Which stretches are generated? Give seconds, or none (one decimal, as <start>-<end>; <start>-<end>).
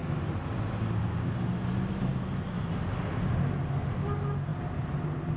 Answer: none